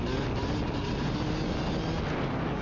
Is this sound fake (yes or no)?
no